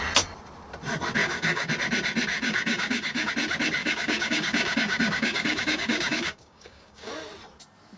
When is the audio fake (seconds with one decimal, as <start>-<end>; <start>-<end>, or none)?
1.2-1.7; 2.3-3.3; 3.8-7.1